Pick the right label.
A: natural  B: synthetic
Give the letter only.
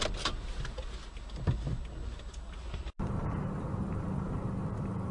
A